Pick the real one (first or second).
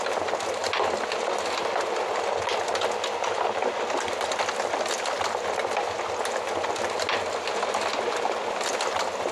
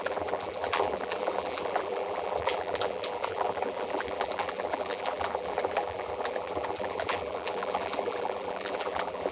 first